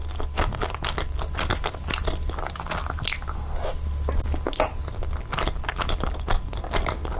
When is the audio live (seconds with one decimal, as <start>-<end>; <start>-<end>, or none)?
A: 0.0-7.2